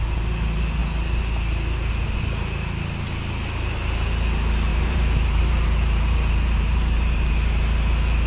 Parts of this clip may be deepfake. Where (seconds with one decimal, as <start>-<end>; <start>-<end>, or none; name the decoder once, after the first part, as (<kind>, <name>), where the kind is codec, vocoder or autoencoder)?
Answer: 4.7-7.3 (vocoder, BigVGAN v2)

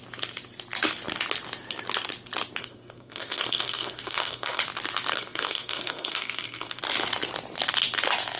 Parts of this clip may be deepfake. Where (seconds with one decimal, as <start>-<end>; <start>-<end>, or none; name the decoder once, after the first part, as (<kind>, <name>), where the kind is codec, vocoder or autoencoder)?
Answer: 2.6-4.6 (codec, SNAC); 5.1-6.8

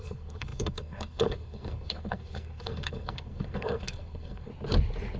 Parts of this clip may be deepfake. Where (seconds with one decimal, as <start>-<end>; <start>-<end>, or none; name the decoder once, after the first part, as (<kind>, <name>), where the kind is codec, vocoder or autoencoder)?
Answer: 0.0-4.5 (codec, SNAC)

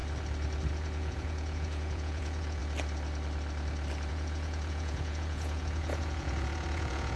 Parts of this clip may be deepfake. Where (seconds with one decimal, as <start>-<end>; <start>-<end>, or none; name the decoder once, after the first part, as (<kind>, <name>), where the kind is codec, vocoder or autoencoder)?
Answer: 0.7-2.6 (vocoder, Vocos); 4.1-7.2

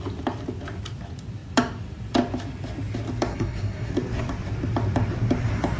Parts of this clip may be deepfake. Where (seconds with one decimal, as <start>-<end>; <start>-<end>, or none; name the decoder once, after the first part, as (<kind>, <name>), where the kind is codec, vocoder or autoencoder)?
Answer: 3.3-3.9 (codec, SNAC)